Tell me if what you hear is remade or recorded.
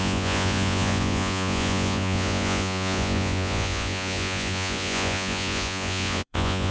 remade